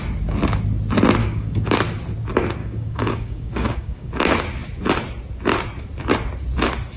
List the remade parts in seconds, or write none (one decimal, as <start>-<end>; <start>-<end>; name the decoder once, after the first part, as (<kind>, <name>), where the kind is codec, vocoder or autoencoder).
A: 1.2-1.8 (codec, DAC); 2.6-4.1